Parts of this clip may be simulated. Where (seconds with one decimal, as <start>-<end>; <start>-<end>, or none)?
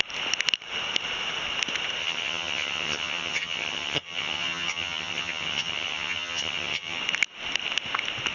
2.0-7.0